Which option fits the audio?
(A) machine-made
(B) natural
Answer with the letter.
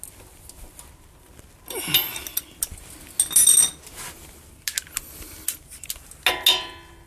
B